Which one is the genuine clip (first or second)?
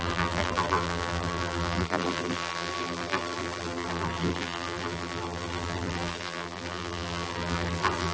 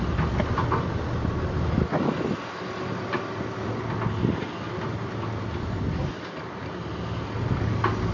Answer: second